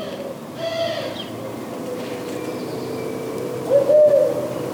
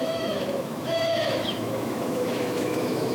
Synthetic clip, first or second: second